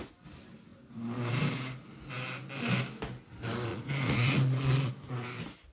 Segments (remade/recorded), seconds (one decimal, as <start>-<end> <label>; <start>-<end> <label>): 0.0-3.7 recorded; 3.7-4.9 remade; 4.9-5.7 recorded

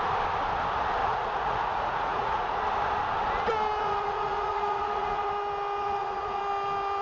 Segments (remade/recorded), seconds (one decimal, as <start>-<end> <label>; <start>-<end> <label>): 0.0-1.0 recorded; 1.0-2.6 remade; 2.6-3.8 recorded; 3.8-5.3 remade; 5.3-5.8 recorded; 5.8-6.4 remade; 6.4-7.0 recorded

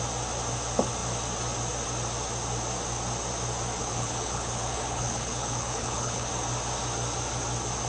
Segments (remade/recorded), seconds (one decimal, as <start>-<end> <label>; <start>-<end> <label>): 0.0-3.8 recorded; 3.8-6.3 remade; 6.3-7.9 recorded

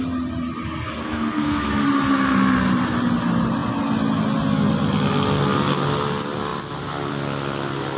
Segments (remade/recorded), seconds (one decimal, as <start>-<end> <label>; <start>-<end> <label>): 0.0-1.0 recorded; 1.0-1.7 remade; 1.7-8.0 recorded

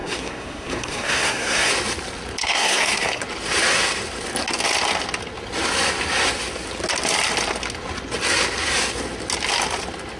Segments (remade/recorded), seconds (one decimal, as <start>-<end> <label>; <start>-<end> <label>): 0.0-1.7 remade; 1.7-2.4 recorded; 2.4-3.2 remade; 3.2-10.2 recorded

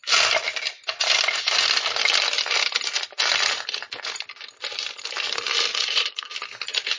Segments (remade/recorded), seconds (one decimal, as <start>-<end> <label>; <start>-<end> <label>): 0.0-5.7 recorded; 5.7-6.3 remade; 6.3-7.0 recorded